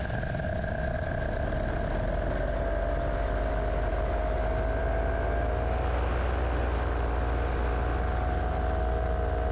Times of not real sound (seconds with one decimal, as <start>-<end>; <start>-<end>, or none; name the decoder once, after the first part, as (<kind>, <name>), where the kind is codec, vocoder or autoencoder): none